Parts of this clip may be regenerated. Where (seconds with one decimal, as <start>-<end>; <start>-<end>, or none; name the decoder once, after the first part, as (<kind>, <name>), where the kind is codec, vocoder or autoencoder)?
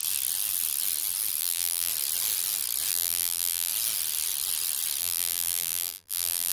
1.4-1.9 (vocoder, BigVGAN v2); 2.9-3.7; 5.0-6.5